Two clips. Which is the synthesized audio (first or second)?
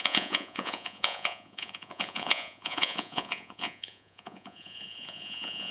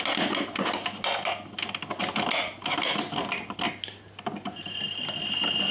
first